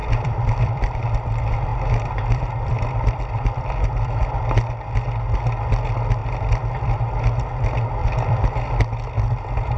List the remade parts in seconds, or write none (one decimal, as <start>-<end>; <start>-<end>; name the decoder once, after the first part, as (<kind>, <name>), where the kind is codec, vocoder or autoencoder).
0.0-1.1 (vocoder, BigVGAN v2); 1.7-4.5; 6.2-7.0; 8.0-8.8